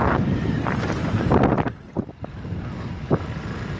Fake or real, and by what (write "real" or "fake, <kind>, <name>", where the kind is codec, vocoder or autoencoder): real